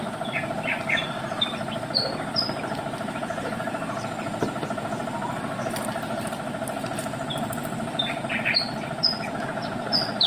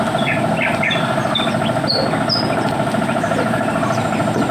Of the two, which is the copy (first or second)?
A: first